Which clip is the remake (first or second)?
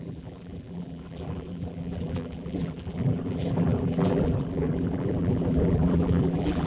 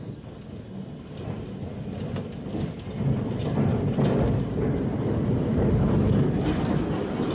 first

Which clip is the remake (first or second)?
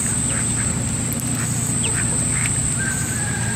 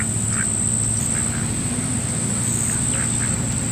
first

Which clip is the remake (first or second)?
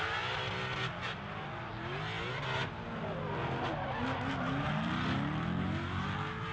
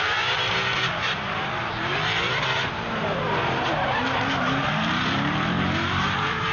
second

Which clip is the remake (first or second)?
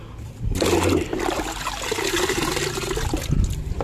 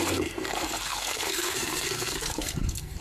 second